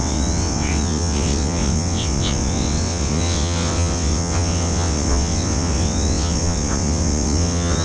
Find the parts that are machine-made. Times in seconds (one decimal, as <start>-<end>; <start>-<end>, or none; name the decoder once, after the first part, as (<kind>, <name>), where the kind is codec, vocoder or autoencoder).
0.0-7.8 (vocoder, WaveNeXt)